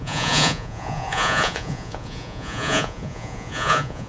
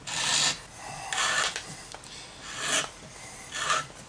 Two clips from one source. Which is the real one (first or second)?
second